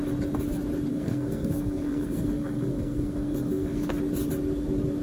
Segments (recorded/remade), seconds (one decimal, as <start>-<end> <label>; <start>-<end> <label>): 0.0-0.9 recorded; 0.9-3.9 remade; 3.9-5.0 recorded